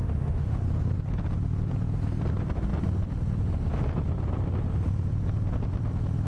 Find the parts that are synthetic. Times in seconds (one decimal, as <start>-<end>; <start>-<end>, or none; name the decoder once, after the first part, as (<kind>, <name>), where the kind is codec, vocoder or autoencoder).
0.0-0.6 (autoencoder, DAC-VAE)